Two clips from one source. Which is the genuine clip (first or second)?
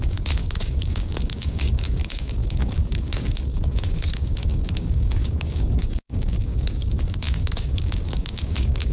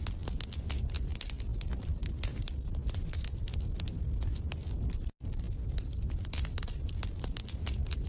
second